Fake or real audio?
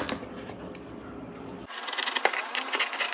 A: real